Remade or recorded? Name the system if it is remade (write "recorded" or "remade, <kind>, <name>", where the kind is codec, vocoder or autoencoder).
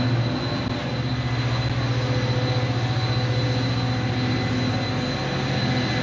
recorded